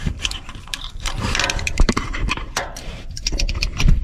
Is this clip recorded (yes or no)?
no